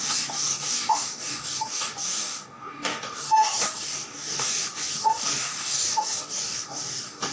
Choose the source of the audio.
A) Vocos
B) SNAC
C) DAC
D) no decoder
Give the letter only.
C